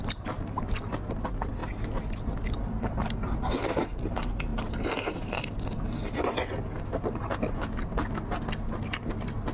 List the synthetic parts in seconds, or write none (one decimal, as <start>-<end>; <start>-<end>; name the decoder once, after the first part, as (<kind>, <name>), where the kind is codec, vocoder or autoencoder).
none